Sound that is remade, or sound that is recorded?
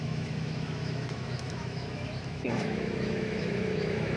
remade